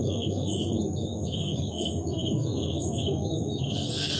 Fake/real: fake